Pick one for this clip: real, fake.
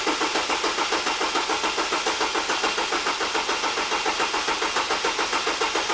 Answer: real